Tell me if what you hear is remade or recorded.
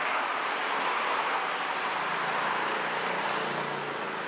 recorded